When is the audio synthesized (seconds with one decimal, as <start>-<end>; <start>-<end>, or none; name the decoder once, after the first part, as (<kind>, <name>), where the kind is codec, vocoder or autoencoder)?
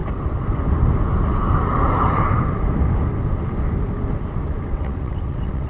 4.7-5.7 (vocoder, WaveNeXt)